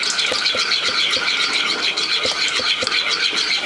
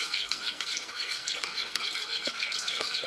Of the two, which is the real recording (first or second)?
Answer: first